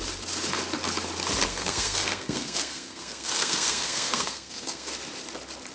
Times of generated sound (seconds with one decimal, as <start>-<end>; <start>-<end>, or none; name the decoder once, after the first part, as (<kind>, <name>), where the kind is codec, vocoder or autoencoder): 1.5-4.9 (codec, SNAC)